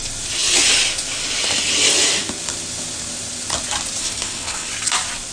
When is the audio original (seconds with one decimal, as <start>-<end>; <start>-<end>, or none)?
0.0-4.0; 4.7-5.3